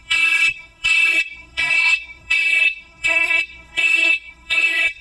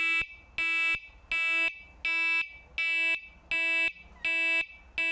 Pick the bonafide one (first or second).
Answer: second